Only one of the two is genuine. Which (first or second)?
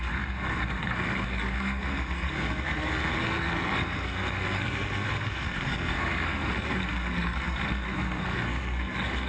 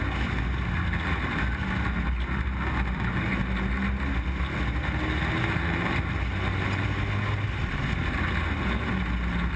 second